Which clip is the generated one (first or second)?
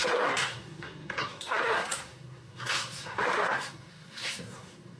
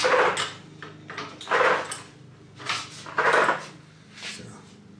first